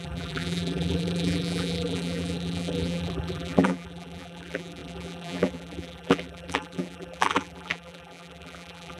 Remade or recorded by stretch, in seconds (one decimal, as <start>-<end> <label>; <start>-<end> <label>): 0.0-9.0 remade